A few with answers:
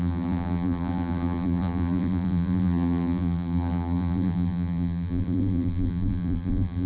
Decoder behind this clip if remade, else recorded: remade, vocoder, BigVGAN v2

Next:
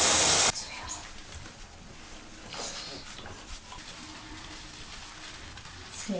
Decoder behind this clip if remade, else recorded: recorded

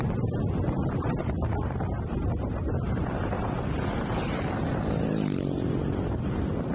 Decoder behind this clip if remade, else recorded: remade, vocoder, BigVGAN v2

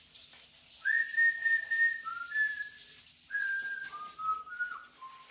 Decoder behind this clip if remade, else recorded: recorded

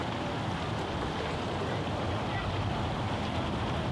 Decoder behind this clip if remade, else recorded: recorded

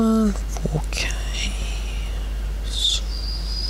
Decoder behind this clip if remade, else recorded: recorded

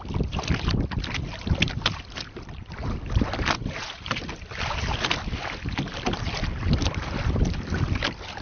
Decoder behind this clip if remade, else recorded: remade, vocoder, BigVGAN v2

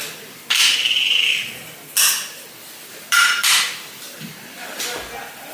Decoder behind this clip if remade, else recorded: recorded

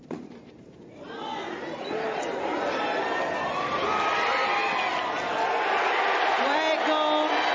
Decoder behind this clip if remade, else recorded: recorded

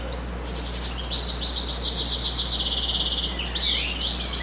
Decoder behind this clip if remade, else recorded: recorded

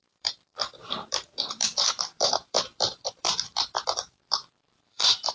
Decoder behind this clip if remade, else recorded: remade, vocoder, BigVGAN v2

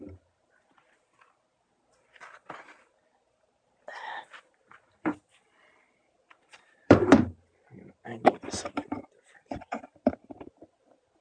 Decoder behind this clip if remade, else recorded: remade, vocoder, BigVGAN v2